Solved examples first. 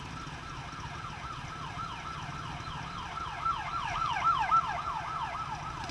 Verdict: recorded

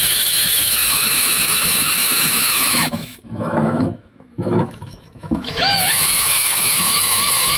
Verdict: remade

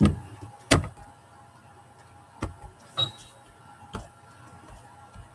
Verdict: recorded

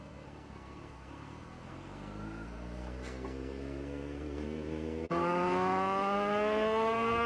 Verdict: remade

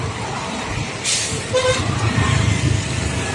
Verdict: recorded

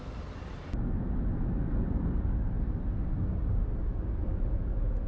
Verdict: recorded